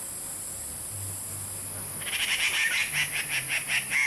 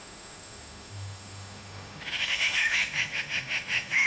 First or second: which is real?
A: first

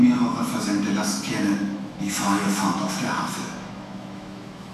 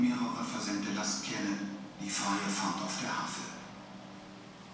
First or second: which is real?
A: second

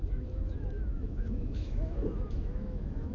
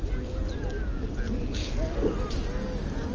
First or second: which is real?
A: second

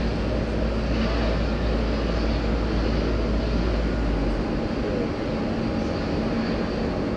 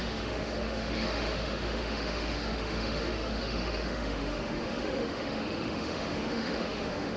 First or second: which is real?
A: first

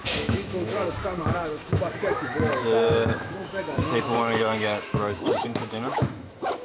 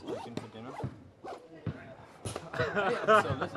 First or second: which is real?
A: second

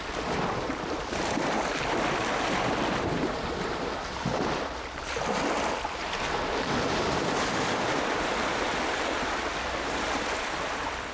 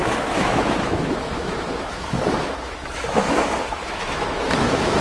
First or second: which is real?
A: first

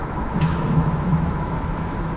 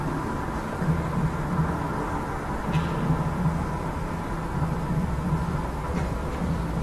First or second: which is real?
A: second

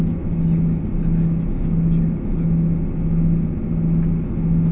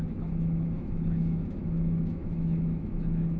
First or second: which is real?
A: first